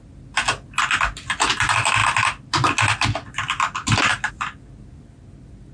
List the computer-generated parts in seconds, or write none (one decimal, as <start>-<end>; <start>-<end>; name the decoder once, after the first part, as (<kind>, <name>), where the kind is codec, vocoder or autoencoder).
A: none